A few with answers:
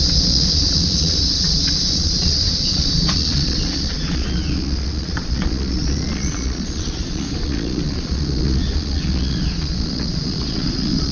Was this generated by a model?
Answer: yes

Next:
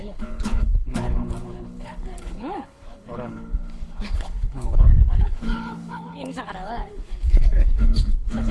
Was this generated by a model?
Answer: yes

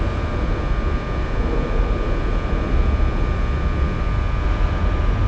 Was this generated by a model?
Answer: no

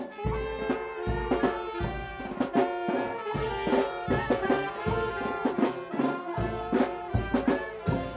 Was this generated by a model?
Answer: no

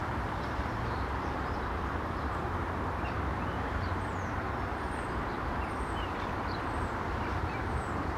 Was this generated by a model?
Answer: yes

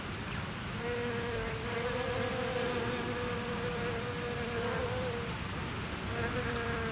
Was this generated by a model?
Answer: no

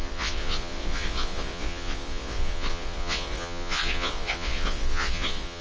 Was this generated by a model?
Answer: yes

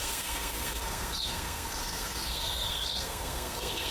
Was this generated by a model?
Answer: yes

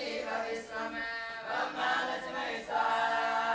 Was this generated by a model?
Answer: no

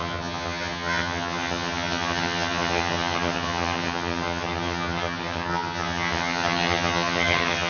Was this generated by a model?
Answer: yes